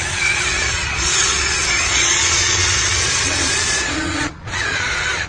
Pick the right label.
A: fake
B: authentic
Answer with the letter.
A